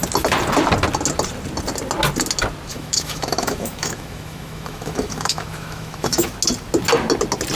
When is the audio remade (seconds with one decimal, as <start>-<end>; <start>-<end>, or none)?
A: 2.7-6.3